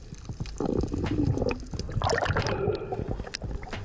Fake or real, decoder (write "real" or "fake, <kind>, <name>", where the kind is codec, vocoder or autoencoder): real